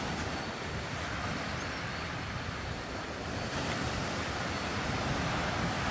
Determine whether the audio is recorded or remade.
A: recorded